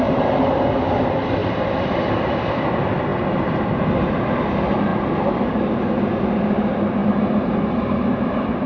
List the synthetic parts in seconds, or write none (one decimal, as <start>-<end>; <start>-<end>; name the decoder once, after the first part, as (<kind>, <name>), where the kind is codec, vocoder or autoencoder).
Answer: 1.4-2.3 (vocoder, BigVGAN v2); 3.1-3.6